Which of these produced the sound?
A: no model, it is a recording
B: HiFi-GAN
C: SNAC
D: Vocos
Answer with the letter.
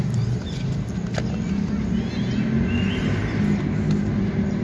A